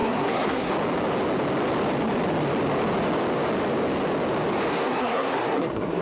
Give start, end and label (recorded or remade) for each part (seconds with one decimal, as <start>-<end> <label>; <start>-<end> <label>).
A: 0.0-0.7 remade; 0.7-4.7 recorded; 4.7-6.0 remade